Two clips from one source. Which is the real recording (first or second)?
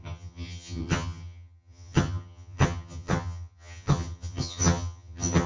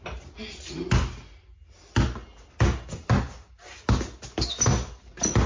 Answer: second